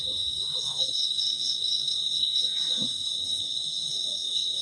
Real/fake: fake